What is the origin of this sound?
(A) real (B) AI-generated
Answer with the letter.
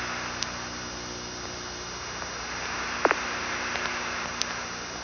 A